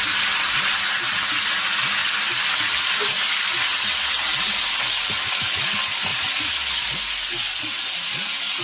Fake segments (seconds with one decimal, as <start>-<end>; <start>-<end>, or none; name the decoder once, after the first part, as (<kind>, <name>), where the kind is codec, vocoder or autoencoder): none